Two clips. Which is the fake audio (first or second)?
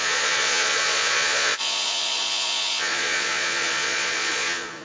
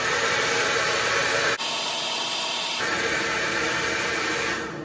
first